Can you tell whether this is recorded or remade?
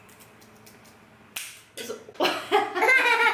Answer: recorded